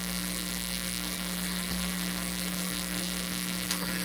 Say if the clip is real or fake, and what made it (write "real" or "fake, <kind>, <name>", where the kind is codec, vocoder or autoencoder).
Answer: fake, codec, SNAC